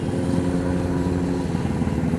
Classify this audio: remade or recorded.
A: recorded